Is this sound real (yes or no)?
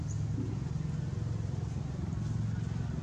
yes